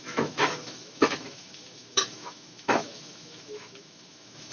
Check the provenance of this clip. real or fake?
fake